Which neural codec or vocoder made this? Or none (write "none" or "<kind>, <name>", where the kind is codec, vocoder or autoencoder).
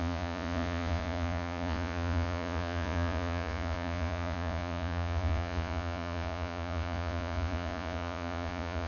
vocoder, Vocos